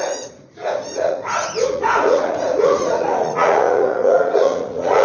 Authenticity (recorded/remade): remade